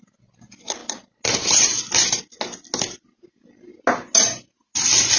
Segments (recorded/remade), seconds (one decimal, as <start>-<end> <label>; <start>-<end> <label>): 0.0-5.2 recorded